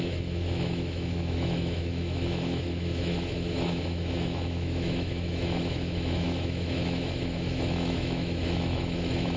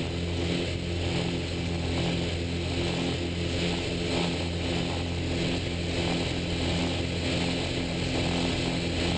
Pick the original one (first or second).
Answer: second